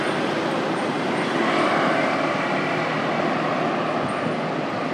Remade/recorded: recorded